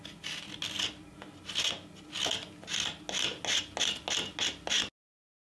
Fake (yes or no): no